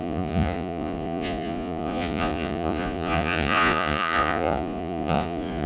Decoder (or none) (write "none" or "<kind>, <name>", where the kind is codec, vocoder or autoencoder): vocoder, Vocos